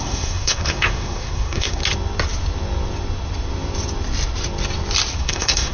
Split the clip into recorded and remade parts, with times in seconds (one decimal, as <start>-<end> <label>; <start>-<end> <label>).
0.0-1.8 remade; 1.8-5.2 recorded; 5.2-5.7 remade